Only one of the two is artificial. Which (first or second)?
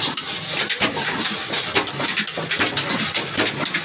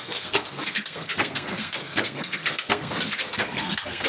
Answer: second